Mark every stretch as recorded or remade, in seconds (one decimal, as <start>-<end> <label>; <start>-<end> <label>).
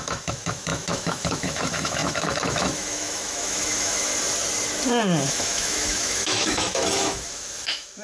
0.0-4.1 remade; 4.1-5.3 recorded; 5.3-8.0 remade